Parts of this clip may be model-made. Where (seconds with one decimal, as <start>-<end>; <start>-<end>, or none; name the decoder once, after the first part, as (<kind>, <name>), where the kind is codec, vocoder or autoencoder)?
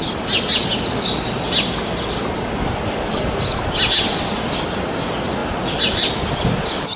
none